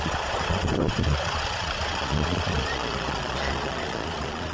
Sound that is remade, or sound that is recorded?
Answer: remade